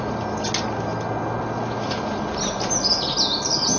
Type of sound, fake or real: real